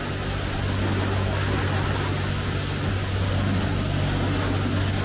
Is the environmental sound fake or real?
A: real